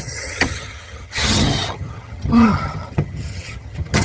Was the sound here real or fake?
fake